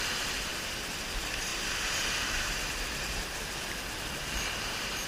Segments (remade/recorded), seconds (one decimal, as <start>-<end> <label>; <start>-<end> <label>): 0.0-0.5 remade; 0.5-1.1 recorded; 1.1-1.5 remade; 1.5-2.8 recorded; 2.8-5.1 remade

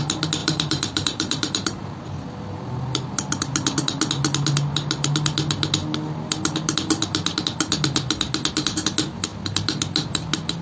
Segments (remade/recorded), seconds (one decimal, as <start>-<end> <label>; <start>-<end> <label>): 0.0-0.4 recorded; 0.4-1.9 remade; 1.9-10.6 recorded

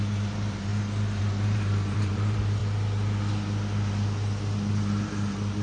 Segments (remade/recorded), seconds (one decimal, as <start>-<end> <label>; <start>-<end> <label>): 0.0-0.7 remade; 0.7-1.2 recorded; 1.2-2.6 remade; 2.6-4.7 recorded; 4.7-5.6 remade